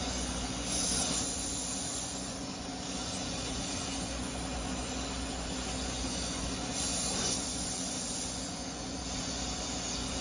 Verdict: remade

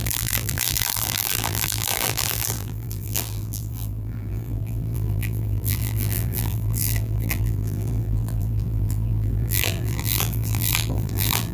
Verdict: remade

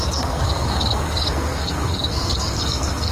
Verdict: remade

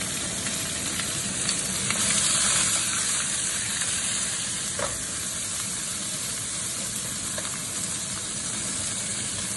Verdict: remade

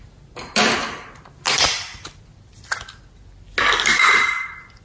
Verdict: recorded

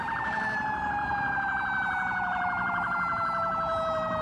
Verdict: remade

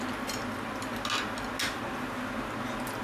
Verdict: recorded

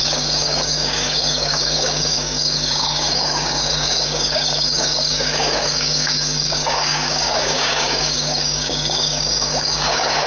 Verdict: remade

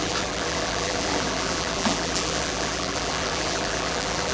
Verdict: remade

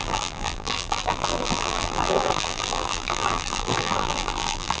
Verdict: remade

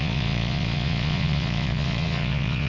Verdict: remade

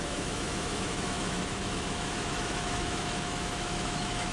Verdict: remade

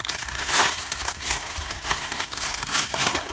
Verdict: remade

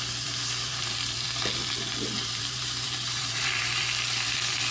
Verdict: remade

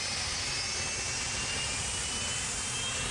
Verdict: recorded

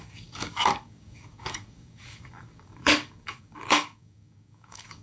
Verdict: remade